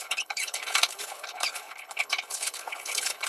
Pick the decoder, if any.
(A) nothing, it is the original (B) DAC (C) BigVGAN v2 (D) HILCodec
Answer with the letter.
D